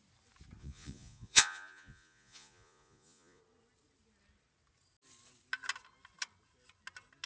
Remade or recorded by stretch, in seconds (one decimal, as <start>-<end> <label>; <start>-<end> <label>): 0.0-0.6 recorded; 0.6-3.4 remade; 3.4-7.3 recorded